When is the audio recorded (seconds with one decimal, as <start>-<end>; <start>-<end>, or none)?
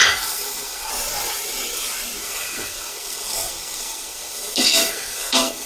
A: 0.9-2.2